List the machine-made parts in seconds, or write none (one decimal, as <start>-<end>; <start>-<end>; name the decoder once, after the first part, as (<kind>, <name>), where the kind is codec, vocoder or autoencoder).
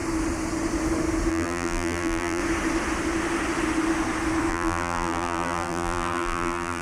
1.3-2.4 (vocoder, BigVGAN v2); 4.5-6.8